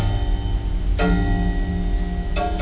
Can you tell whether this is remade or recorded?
recorded